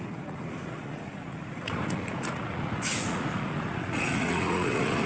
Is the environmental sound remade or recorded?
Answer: remade